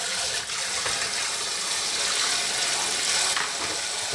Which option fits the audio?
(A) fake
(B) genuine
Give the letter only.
B